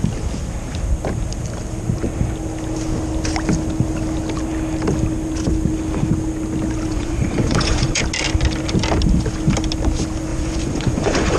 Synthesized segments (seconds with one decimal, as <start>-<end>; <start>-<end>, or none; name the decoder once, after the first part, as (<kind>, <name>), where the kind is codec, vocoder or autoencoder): 6.9-8.0 (vocoder, Vocos); 10.3-11.4